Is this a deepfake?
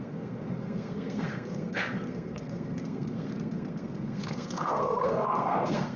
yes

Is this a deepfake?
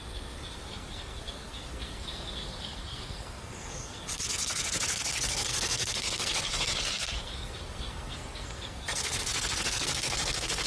yes